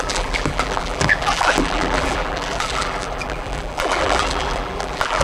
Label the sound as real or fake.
fake